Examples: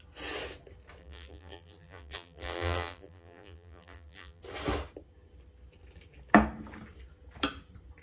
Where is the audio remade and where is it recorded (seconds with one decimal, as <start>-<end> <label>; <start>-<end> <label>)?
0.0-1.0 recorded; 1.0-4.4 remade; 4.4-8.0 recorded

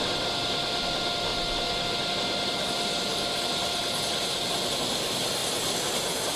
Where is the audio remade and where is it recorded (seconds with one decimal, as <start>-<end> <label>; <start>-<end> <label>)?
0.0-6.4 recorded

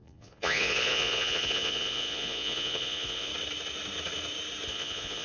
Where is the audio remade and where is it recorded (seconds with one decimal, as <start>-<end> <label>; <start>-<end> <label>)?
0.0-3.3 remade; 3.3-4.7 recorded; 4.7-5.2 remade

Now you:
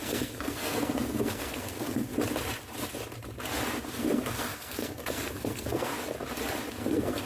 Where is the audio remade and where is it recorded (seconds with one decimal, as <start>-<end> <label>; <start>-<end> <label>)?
0.0-2.1 remade; 2.1-3.9 recorded; 3.9-5.9 remade; 5.9-6.7 recorded; 6.7-7.3 remade

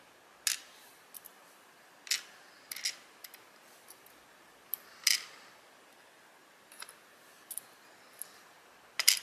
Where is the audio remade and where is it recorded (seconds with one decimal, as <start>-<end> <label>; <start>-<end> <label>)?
0.0-6.3 recorded; 6.3-6.9 remade; 6.9-9.2 recorded

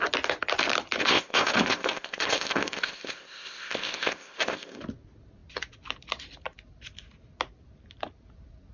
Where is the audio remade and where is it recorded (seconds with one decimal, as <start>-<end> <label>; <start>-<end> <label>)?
0.0-1.0 recorded; 1.0-4.8 remade; 4.8-8.7 recorded

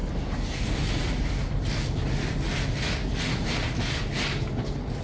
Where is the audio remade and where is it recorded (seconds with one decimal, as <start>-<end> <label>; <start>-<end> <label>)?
0.0-5.0 recorded